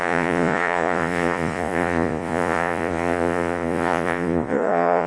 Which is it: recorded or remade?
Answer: remade